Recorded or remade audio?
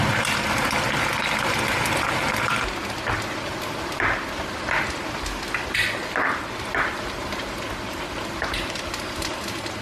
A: recorded